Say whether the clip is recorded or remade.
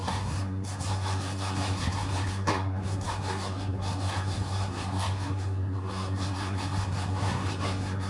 remade